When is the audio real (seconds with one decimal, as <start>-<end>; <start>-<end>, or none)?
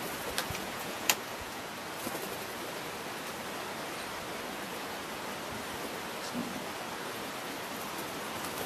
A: 0.0-0.4; 1.7-8.7